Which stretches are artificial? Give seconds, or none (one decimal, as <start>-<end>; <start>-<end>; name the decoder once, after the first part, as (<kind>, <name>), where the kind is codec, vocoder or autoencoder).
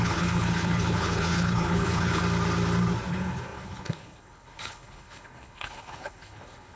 0.0-2.2 (codec, HILCodec); 3.1-6.8